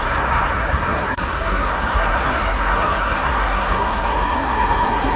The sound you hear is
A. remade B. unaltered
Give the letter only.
A